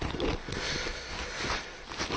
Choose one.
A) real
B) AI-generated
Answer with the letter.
A